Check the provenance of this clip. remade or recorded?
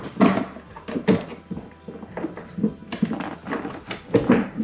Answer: recorded